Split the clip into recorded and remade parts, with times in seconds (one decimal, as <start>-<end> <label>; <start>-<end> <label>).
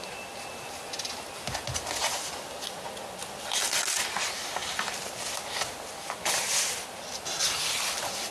0.0-8.3 recorded